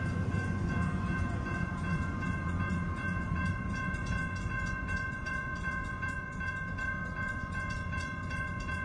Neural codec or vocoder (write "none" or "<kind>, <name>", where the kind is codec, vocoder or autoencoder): vocoder, Vocos